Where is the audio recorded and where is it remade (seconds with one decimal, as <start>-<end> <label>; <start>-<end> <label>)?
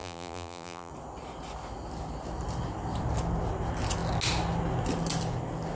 0.0-0.9 remade; 0.9-5.8 recorded